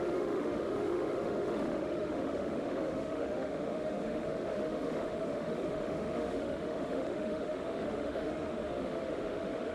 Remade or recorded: remade